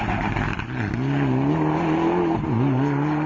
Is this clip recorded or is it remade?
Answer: recorded